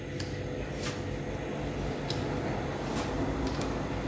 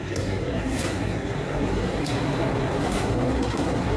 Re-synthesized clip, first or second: second